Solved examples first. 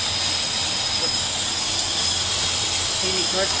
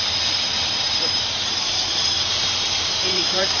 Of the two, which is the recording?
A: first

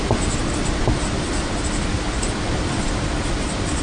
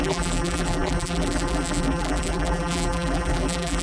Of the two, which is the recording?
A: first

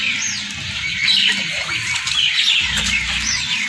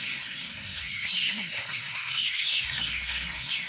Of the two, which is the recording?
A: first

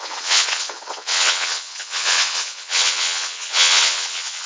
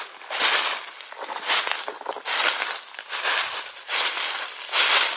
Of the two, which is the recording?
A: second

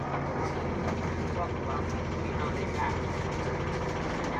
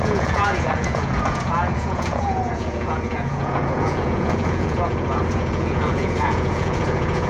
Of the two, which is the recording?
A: first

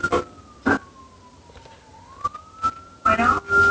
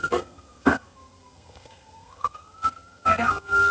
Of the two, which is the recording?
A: first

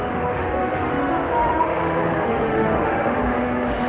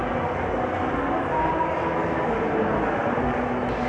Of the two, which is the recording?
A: second